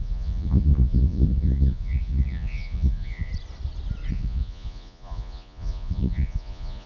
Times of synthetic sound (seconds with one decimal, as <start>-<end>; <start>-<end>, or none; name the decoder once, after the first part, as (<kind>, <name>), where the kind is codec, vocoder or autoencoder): 0.0-3.3 (vocoder, Vocos); 4.1-6.9